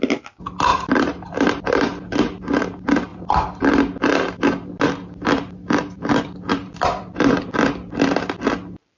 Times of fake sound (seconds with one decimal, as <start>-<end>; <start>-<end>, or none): 0.7-1.5; 3.1-3.7; 6.6-7.6